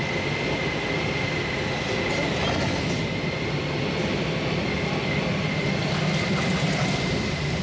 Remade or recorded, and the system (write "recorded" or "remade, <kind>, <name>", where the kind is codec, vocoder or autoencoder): recorded